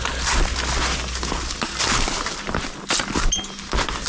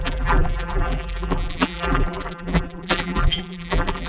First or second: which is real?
first